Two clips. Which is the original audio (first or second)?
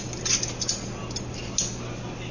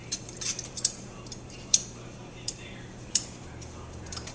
first